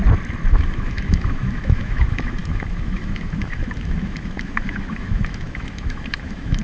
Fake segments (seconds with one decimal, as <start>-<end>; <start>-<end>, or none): 0.5-6.6